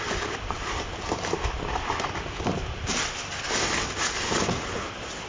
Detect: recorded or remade remade